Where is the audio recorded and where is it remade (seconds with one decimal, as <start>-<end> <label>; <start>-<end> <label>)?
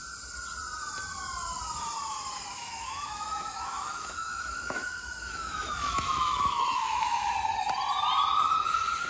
0.0-2.5 recorded; 2.5-7.3 remade; 7.3-9.1 recorded